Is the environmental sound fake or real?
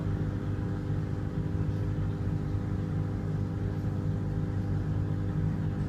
real